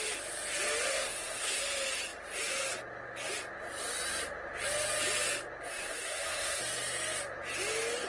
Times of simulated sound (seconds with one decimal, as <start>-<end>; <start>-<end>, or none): 0.9-1.6; 5.7-6.6